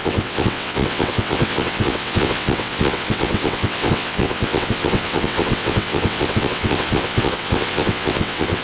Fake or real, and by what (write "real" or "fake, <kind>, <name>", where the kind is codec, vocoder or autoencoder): fake, vocoder, WaveNeXt